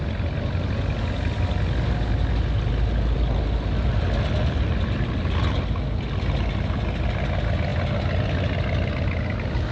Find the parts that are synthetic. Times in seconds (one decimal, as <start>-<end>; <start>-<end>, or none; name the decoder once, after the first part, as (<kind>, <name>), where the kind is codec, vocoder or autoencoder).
none